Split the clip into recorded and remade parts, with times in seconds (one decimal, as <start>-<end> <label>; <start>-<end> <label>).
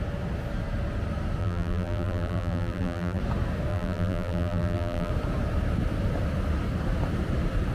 0.0-1.4 recorded; 1.4-3.2 remade; 3.2-3.7 recorded; 3.7-5.1 remade; 5.1-7.7 recorded